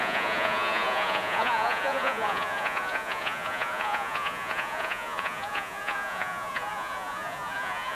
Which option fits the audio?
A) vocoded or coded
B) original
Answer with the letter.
A